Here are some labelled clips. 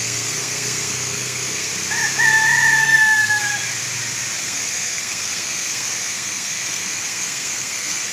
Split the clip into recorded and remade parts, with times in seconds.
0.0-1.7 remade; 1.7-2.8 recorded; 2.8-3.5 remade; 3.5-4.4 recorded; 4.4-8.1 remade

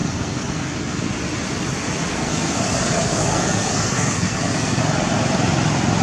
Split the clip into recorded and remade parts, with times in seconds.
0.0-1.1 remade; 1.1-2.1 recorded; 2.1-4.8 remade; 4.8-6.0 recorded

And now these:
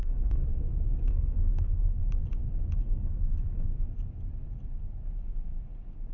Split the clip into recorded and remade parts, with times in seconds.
0.0-0.4 remade; 0.4-1.1 recorded; 1.1-2.0 remade; 2.0-2.8 recorded; 2.8-3.7 remade; 3.7-6.1 recorded

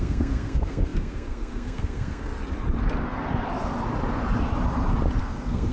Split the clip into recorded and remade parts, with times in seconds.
0.0-2.3 remade; 2.3-5.2 recorded; 5.2-5.7 remade

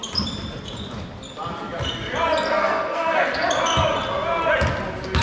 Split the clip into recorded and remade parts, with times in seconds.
0.0-2.6 recorded; 2.6-3.3 remade; 3.3-5.2 recorded

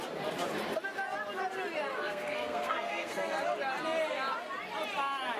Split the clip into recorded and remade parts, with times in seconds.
0.0-1.9 recorded; 1.9-3.4 remade; 3.4-5.4 recorded

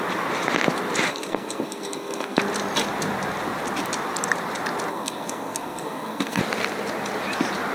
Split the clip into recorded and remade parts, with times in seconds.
0.0-1.1 recorded; 1.1-2.4 remade; 2.4-4.9 recorded; 4.9-6.4 remade; 6.4-7.7 recorded

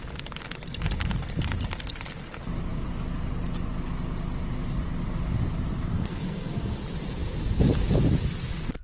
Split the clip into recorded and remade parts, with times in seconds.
0.0-5.9 recorded; 5.9-6.8 remade; 6.8-8.8 recorded